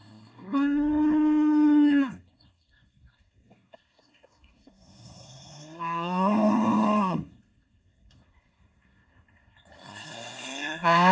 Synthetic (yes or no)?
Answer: yes